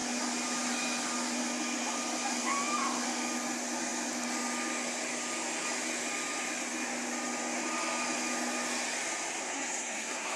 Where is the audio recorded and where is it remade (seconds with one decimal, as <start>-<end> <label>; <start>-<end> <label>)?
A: 0.0-9.4 recorded; 9.4-10.4 remade